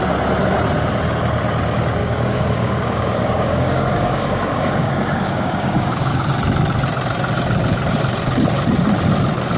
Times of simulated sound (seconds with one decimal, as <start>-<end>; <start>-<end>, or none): 2.0-6.3